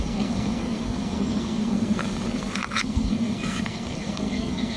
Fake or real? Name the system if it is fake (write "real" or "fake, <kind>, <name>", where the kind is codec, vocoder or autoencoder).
fake, codec, SNAC